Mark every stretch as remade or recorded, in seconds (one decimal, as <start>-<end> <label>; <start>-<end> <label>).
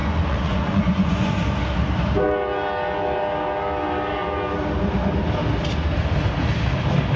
0.0-1.3 remade; 1.3-7.2 recorded